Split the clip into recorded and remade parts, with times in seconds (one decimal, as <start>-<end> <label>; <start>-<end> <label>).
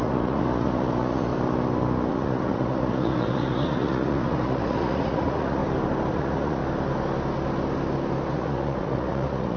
0.0-1.3 remade; 1.3-2.1 recorded; 2.1-5.6 remade; 5.6-6.1 recorded; 6.1-6.6 remade; 6.6-8.3 recorded; 8.3-9.6 remade